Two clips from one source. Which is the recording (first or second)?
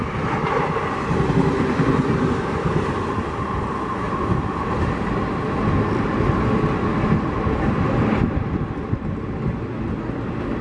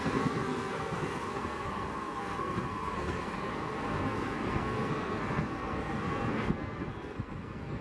first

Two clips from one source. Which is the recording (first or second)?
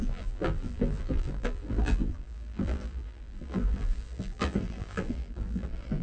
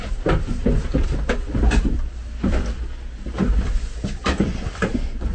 second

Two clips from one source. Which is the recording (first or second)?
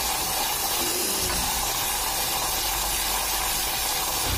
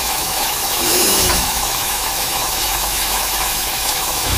first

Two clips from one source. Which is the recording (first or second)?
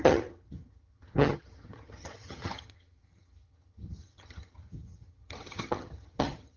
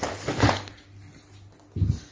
second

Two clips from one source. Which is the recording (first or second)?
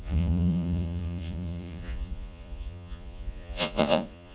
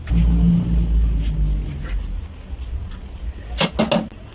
second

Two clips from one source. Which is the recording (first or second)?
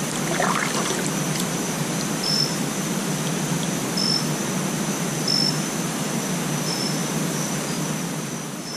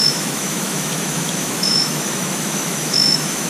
first